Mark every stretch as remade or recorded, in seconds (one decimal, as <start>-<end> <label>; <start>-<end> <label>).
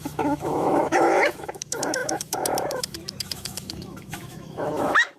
0.0-5.2 remade